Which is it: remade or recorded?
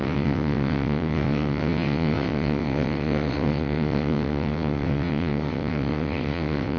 remade